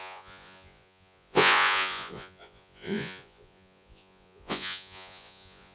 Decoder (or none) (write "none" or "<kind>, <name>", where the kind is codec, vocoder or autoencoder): vocoder, Vocos